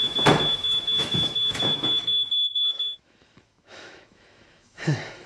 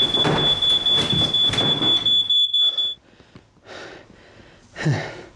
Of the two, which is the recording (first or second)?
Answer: second